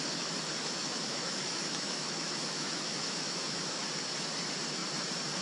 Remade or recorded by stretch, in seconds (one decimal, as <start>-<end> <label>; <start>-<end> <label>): 0.0-0.6 recorded; 0.6-3.8 remade; 3.8-5.4 recorded